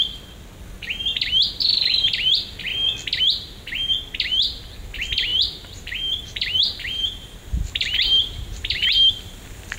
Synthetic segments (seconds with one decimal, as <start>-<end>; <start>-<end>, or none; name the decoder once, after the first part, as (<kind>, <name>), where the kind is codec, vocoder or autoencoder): 5.3-9.1 (vocoder, BigVGAN v2)

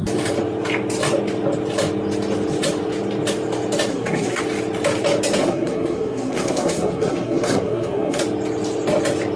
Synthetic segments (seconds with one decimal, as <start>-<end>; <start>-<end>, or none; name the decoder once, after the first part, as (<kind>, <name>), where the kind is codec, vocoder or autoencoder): 3.9-4.4 (codec, SNAC); 5.4-8.2

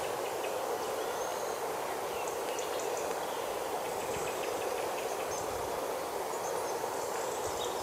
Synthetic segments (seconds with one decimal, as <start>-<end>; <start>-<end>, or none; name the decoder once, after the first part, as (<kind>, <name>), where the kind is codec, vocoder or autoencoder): 1.3-5.2 (vocoder, BigVGAN v2)

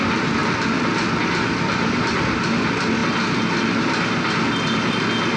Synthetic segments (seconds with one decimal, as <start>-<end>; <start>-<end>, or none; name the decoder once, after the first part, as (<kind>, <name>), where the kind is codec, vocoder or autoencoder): none